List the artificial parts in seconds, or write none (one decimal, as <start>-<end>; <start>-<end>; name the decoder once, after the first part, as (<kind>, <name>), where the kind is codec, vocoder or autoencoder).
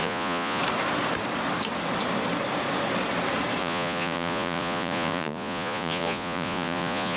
0.0-0.6 (vocoder, Vocos); 3.6-7.2